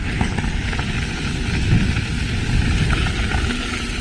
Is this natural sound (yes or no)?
yes